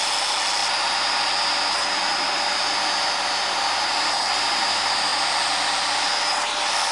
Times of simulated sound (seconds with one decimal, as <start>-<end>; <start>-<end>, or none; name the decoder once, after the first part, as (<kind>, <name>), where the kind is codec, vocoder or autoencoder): 2.1-4.1 (vocoder, BigVGAN v2); 5.1-6.2